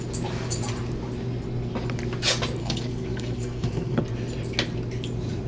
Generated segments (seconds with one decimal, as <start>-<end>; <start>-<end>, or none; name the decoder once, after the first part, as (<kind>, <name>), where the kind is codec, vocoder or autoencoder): 2.6-4.0 (codec, SNAC)